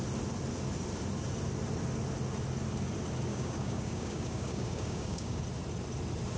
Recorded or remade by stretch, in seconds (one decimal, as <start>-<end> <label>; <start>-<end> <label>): 0.0-3.3 recorded; 3.3-5.4 remade; 5.4-6.4 recorded